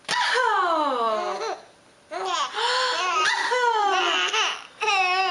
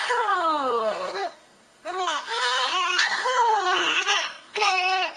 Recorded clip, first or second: first